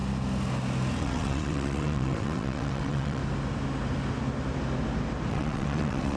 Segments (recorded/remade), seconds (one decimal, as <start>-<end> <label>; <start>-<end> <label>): 0.0-1.0 recorded; 1.0-3.2 remade; 3.2-5.3 recorded; 5.3-6.2 remade